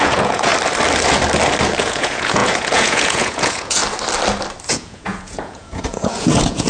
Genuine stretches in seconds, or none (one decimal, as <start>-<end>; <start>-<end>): 0.5-1.8; 3.8-4.7